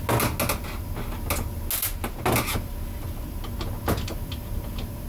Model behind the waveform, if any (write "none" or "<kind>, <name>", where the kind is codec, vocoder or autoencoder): none